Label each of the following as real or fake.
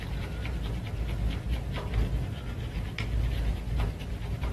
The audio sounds real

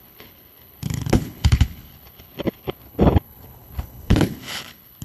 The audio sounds fake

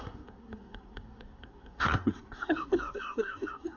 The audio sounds fake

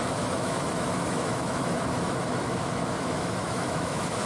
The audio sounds fake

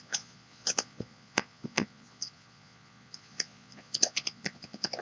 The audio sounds fake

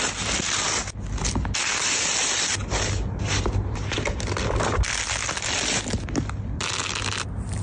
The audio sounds real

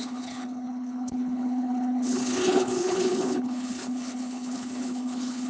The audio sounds fake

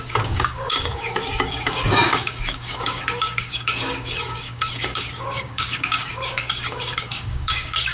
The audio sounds fake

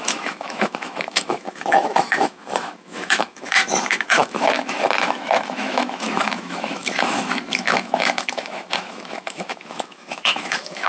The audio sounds fake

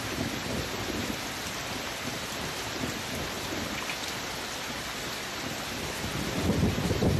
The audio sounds real